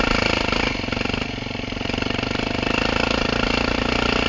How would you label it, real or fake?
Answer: real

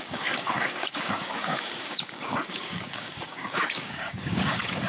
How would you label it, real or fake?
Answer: fake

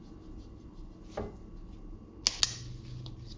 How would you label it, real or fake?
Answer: real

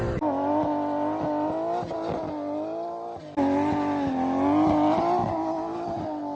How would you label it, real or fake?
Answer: real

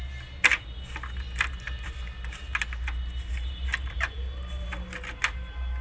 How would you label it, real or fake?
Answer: real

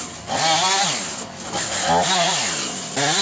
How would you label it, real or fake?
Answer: real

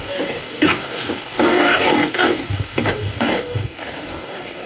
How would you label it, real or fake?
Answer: fake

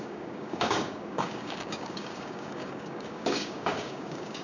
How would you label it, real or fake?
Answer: fake